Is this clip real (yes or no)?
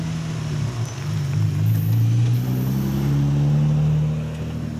yes